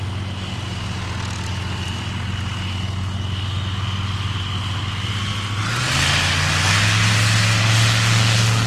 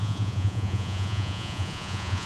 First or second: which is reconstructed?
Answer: second